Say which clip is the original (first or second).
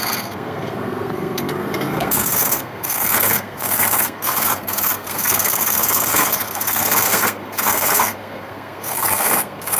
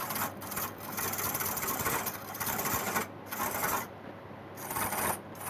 second